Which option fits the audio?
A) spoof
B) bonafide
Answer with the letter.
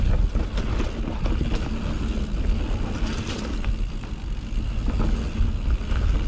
B